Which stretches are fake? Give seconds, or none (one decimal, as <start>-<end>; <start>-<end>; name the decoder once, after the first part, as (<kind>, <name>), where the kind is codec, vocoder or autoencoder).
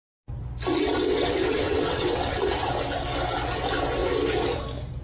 0.7-2.7 (vocoder, WaveNeXt)